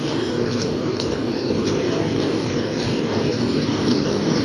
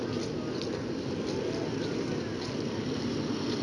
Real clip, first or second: second